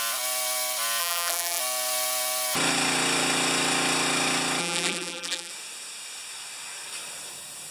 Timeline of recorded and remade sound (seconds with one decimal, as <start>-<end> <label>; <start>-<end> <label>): 0.0-1.0 recorded; 1.0-1.6 remade; 1.6-4.6 recorded; 4.6-5.5 remade; 5.5-7.7 recorded